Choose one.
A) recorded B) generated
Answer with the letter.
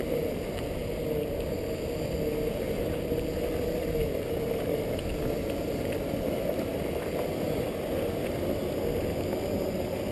A